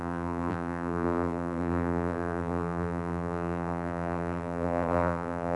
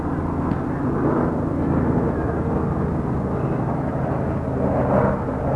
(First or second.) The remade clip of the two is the first